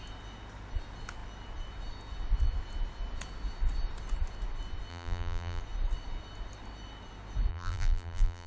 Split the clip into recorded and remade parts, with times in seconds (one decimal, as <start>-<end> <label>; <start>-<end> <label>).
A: 0.0-4.9 recorded; 4.9-5.6 remade; 5.6-7.5 recorded; 7.5-8.5 remade